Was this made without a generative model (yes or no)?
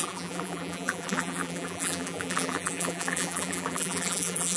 no